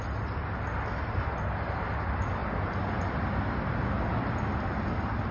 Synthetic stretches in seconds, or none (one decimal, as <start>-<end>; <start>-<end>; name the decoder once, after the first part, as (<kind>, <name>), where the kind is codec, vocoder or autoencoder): none